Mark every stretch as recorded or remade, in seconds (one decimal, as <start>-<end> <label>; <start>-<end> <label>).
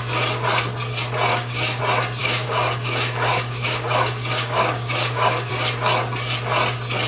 0.0-1.3 recorded; 1.3-1.8 remade; 1.8-2.2 recorded; 2.2-5.5 remade; 5.5-7.1 recorded